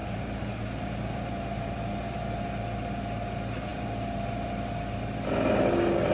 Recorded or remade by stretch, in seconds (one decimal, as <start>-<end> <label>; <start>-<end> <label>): 0.0-2.5 remade; 2.5-6.1 recorded